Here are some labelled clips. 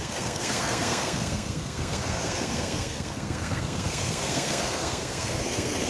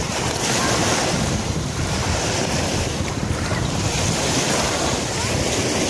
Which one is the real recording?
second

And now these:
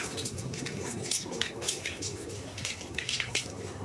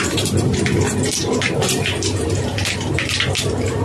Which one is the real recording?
second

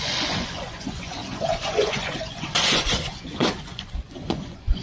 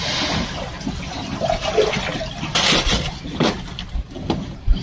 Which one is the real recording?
second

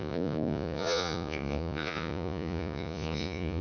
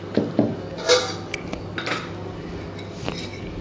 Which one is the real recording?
second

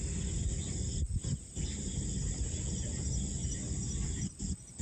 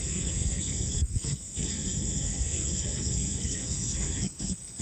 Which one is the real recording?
first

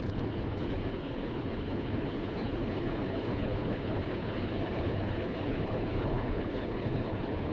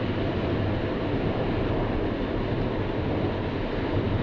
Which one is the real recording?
second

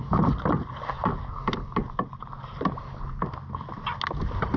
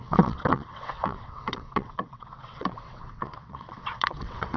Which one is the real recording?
first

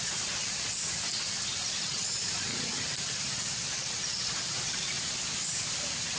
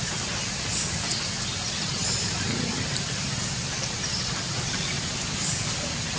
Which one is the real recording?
second